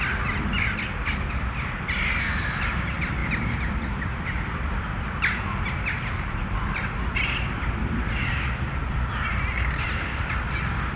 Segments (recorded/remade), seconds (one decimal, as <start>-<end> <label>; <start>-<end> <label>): 0.0-11.0 recorded